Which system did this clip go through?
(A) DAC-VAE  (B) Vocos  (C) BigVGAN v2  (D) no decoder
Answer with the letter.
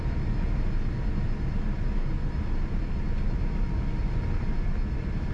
D